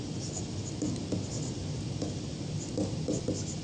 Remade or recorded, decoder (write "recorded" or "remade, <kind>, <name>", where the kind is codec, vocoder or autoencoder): recorded